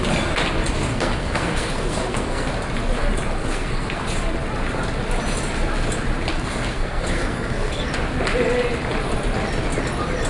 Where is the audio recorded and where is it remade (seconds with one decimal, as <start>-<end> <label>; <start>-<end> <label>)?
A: 0.0-0.9 recorded; 0.9-2.5 remade; 2.5-3.4 recorded; 3.4-4.0 remade; 4.0-6.3 recorded; 6.3-7.9 remade; 7.9-10.3 recorded